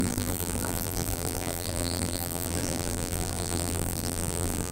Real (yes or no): no